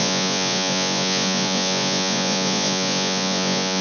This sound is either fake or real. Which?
fake